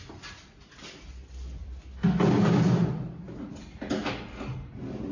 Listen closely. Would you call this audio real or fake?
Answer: real